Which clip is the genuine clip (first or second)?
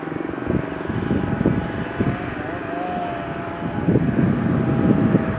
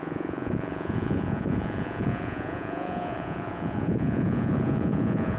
first